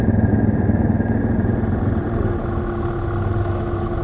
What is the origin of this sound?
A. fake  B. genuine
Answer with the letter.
B